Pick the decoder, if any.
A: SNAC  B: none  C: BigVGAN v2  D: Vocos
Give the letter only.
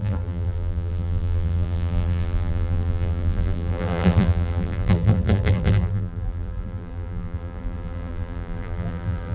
C